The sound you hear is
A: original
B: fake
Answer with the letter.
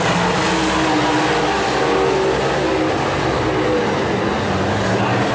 A